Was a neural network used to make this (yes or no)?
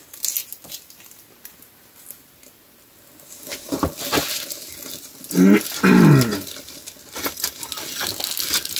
no